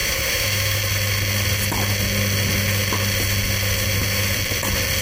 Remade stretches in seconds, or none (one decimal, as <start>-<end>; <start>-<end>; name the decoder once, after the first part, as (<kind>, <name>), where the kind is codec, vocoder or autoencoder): 0.0-0.8 (autoencoder, DAC-VAE)